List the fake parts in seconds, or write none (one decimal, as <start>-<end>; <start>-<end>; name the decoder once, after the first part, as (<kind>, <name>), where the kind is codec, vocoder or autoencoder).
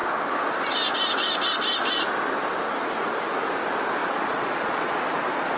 4.0-5.0 (vocoder, Vocos)